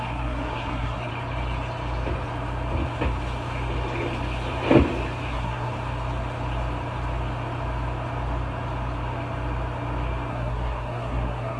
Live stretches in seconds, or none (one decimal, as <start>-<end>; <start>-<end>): 1.1-5.3; 5.7-10.3